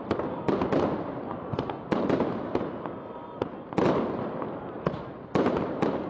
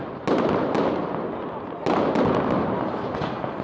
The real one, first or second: second